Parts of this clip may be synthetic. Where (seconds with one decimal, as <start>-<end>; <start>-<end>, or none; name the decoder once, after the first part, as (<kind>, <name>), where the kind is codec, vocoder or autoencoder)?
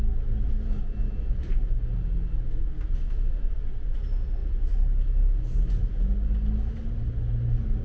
none